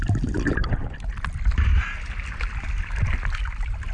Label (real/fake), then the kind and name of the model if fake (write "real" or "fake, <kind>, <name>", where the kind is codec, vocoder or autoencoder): real